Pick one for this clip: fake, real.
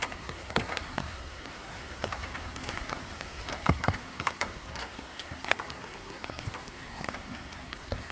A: fake